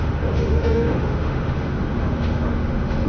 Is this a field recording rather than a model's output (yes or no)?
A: no